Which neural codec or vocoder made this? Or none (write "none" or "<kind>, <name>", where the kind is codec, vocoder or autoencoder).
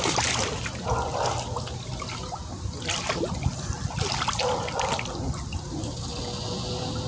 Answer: none